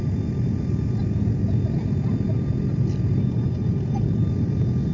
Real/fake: real